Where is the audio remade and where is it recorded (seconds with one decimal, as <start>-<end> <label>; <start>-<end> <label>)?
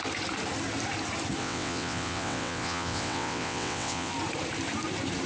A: 0.0-1.4 recorded; 1.4-4.1 remade; 4.1-5.3 recorded